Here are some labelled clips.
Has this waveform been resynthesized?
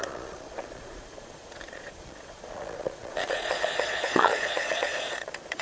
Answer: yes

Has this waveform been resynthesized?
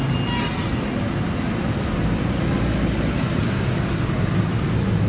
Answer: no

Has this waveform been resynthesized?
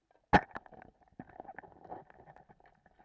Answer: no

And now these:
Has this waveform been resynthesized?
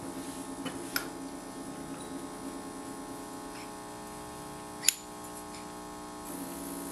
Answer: no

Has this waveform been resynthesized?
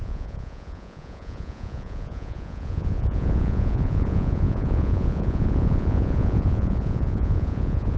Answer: yes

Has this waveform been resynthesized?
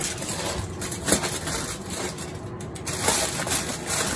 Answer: no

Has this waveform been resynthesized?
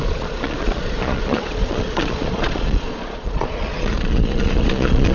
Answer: yes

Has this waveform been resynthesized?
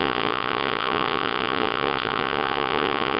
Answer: yes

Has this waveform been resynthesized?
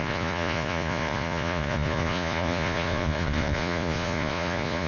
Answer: yes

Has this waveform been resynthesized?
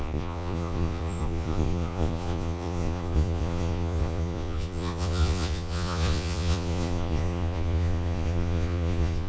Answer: yes